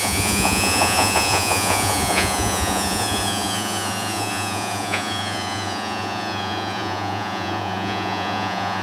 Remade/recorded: remade